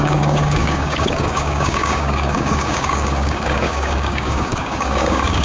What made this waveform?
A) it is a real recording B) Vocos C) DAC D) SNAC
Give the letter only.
C